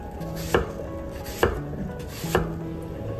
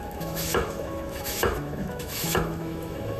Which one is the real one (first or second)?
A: first